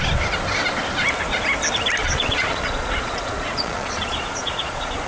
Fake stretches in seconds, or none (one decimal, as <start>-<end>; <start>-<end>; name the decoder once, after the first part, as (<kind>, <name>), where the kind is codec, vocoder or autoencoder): 2.0-5.1 (vocoder, Vocos)

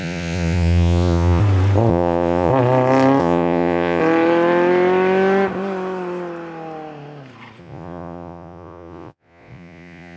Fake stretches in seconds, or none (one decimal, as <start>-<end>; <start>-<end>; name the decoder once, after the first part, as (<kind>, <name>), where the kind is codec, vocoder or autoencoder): 0.0-1.4 (vocoder, Vocos); 1.9-2.5; 3.2-4.0; 7.6-10.2

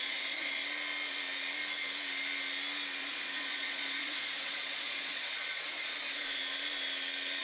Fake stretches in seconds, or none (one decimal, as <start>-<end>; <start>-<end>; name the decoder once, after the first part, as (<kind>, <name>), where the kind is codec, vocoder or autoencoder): 0.0-0.6 (vocoder, Vocos); 3.0-6.4

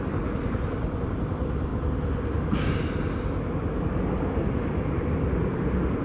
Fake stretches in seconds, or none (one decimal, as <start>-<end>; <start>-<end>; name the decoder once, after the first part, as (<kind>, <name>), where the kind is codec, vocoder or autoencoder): none

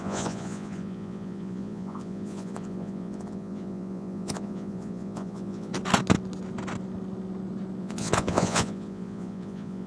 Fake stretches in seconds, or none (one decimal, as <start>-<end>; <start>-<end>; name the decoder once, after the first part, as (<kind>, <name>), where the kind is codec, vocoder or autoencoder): 0.0-5.7 (vocoder, Vocos); 7.8-9.9

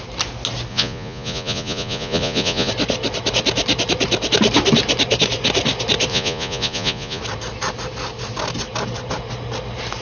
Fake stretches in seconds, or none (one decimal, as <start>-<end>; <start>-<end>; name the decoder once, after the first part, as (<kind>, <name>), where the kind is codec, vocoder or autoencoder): 0.7-2.7 (vocoder, Vocos); 6.1-7.2

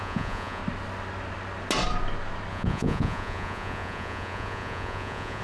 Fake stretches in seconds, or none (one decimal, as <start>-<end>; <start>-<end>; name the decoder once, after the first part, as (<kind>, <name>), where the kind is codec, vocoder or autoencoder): 0.0-0.6 (vocoder, Vocos); 2.5-5.4